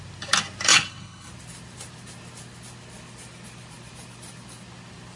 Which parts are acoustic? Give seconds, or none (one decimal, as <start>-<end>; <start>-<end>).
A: 0.0-0.7; 1.3-5.2